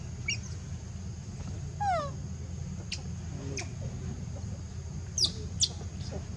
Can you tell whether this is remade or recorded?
recorded